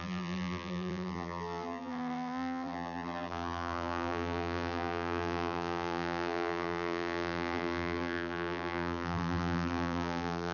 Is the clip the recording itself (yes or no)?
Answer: no